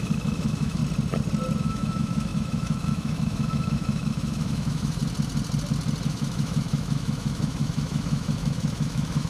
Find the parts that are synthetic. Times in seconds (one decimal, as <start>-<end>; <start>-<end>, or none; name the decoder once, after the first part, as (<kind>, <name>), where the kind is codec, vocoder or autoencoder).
0.0-0.8 (autoencoder, DAC-VAE); 1.6-5.0; 6.1-9.3